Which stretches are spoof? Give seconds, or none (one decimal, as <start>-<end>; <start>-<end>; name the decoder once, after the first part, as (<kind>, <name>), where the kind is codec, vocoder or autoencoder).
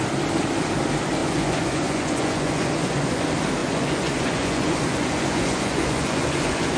1.2-3.2 (vocoder, Vocos); 3.6-6.8